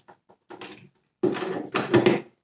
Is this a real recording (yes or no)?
yes